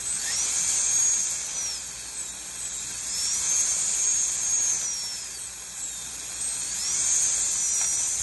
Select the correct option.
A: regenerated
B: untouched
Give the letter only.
B